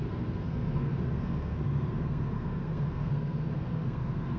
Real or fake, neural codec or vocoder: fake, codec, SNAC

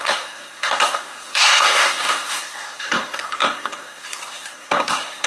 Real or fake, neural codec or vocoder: fake, codec, SNAC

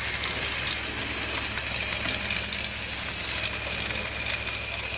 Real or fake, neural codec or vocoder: real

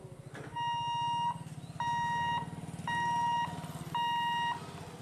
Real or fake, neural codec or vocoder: real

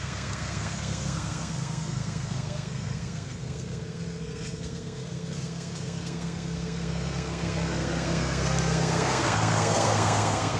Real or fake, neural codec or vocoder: fake, codec, SNAC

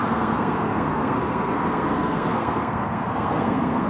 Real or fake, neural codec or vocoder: fake, codec, SNAC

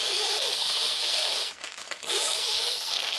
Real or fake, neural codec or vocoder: fake, codec, SNAC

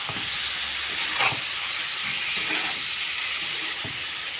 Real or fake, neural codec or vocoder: real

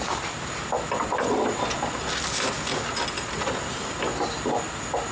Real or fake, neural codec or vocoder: real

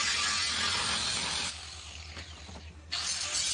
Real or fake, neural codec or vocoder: real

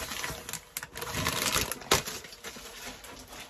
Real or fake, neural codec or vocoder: real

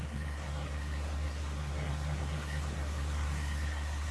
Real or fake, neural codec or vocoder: fake, codec, SNAC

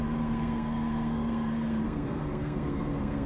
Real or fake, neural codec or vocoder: fake, codec, SNAC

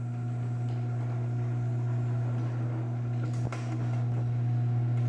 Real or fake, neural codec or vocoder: real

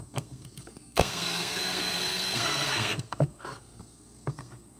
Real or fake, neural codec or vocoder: fake, codec, SNAC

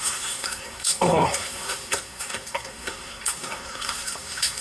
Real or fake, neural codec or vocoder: fake, codec, SNAC